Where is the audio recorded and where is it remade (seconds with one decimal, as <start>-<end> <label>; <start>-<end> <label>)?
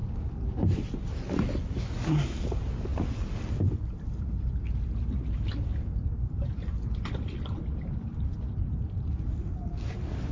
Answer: 0.0-10.3 recorded